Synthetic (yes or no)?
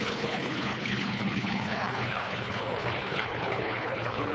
yes